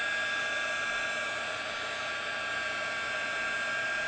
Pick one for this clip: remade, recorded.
recorded